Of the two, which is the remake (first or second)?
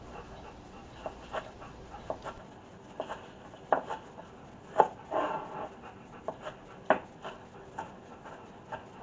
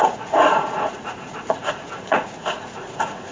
second